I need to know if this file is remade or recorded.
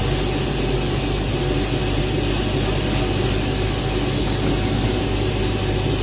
recorded